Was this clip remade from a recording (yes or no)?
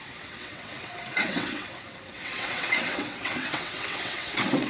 yes